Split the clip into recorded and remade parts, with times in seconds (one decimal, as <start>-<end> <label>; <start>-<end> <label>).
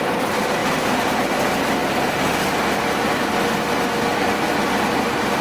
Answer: 0.0-0.6 recorded; 0.6-1.3 remade; 1.3-5.4 recorded